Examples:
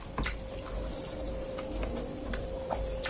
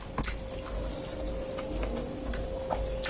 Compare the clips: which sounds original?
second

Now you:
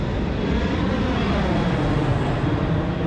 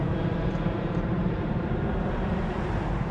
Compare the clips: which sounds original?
first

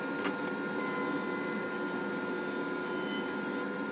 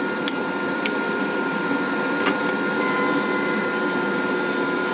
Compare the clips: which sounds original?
first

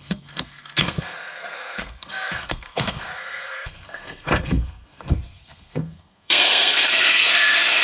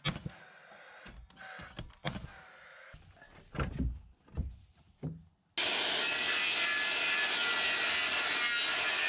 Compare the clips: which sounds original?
second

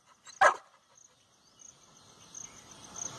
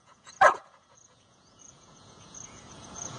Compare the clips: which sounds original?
first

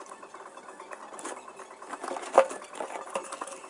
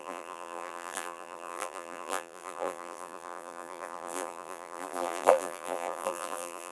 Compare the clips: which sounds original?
first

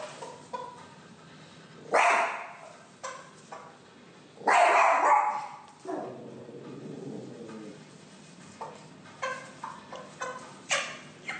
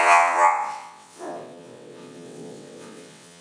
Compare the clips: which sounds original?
first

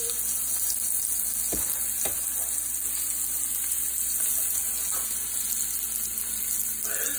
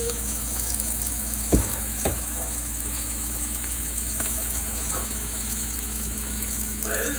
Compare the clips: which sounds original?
first